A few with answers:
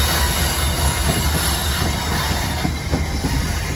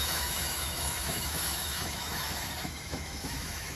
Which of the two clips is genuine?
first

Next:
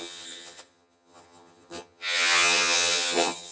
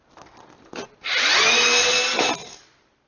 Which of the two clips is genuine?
second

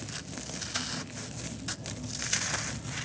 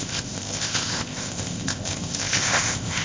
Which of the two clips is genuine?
first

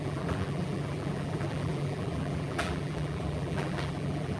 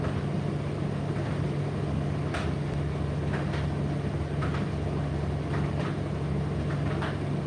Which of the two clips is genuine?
second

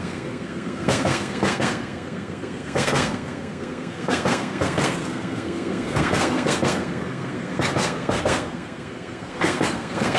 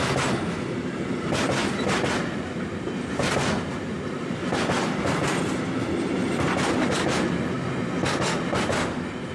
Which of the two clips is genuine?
second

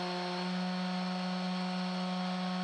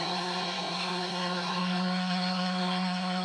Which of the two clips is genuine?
first